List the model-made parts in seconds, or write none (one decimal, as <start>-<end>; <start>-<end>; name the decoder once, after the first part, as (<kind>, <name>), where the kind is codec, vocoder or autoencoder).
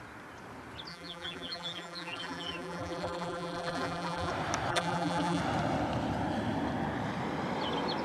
0.9-4.3 (vocoder, BigVGAN v2); 4.7-5.4